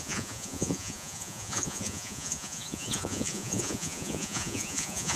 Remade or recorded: remade